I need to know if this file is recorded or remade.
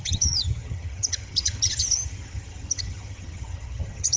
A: remade